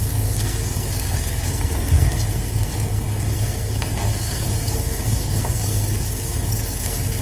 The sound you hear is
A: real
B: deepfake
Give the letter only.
B